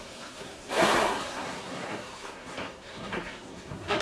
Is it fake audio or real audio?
fake